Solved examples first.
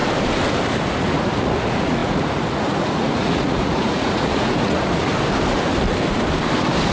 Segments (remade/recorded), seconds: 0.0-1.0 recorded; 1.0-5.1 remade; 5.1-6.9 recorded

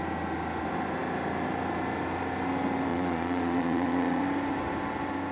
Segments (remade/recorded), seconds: 0.0-2.9 recorded; 2.9-4.2 remade; 4.2-5.3 recorded

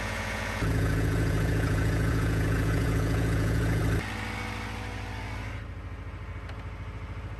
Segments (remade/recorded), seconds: 0.0-3.8 remade; 3.8-7.4 recorded

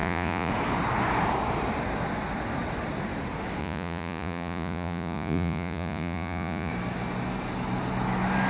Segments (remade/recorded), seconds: 0.0-0.5 remade; 0.5-3.6 recorded; 3.6-6.7 remade; 6.7-8.5 recorded